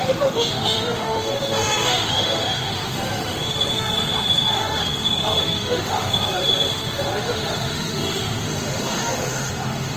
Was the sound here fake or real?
fake